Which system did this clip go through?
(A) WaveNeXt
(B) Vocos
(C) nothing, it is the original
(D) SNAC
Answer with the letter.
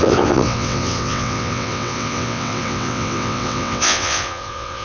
A